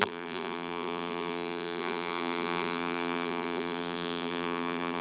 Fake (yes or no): yes